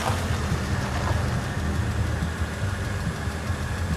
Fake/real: real